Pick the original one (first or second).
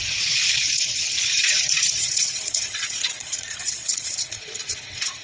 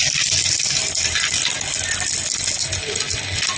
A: second